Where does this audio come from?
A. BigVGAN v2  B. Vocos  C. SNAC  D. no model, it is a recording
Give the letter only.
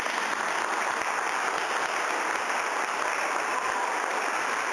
D